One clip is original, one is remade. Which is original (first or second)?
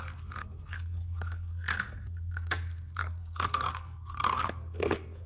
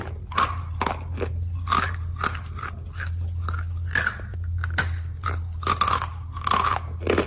second